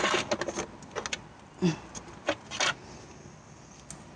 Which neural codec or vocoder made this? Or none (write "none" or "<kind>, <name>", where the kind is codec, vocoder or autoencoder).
none